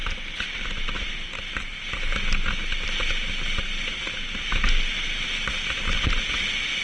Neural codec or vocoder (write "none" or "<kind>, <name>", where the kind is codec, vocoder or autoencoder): none